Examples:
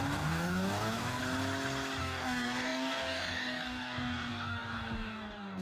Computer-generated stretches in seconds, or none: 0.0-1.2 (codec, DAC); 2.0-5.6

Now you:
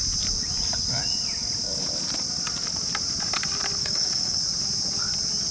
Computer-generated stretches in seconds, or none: 3.8-4.4 (codec, DAC)

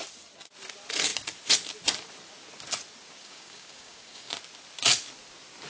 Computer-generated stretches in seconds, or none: 3.2-4.3 (codec, DAC)

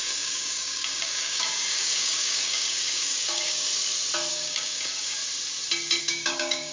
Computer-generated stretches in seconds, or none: 0.0-3.7 (codec, DAC); 4.3-5.2; 6.0-6.7

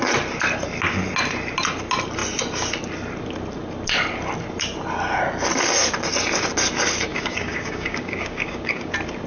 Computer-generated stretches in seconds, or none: 7.1-8.9 (codec, DAC)